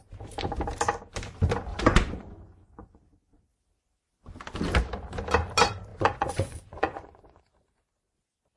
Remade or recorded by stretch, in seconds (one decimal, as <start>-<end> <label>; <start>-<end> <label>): 0.0-1.7 recorded; 1.7-3.0 remade; 3.0-5.9 recorded; 5.9-7.4 remade; 7.4-8.6 recorded